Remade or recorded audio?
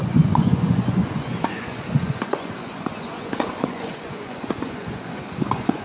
remade